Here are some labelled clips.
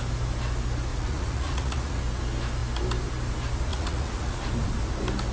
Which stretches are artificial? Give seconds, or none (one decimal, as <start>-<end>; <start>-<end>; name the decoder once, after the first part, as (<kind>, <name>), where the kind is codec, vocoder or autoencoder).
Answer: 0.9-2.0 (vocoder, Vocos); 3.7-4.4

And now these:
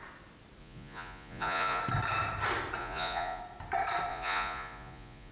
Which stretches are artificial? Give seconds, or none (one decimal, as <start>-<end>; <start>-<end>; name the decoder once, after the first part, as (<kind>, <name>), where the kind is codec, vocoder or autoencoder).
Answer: 0.6-1.8 (vocoder, Vocos); 2.8-3.4; 4.1-5.3

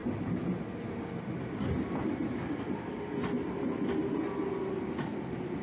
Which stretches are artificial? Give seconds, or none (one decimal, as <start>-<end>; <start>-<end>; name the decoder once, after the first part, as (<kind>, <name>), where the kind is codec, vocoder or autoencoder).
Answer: none

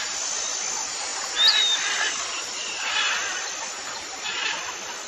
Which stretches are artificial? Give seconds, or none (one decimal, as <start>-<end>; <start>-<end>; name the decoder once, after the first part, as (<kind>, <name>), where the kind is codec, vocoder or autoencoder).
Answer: none

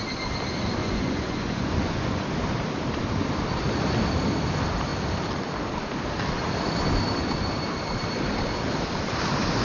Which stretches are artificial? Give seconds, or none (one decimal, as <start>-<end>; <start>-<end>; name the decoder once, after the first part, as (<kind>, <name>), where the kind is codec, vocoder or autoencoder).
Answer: 0.8-2.2 (vocoder, Vocos)

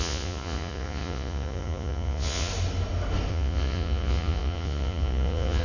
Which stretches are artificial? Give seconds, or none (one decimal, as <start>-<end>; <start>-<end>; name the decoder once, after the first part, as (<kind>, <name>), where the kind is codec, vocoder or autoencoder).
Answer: 0.0-2.5 (vocoder, Vocos); 3.3-5.6

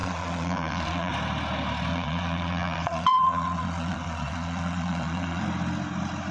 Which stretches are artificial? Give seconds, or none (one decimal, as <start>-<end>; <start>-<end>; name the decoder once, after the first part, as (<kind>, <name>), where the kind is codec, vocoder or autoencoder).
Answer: 0.0-1.1 (vocoder, Vocos); 1.9-5.4

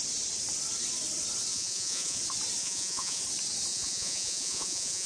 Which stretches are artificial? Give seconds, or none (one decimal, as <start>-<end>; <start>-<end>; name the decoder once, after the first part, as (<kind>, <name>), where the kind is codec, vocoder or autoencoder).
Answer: 1.5-2.2 (vocoder, Vocos); 2.6-3.2; 3.7-5.1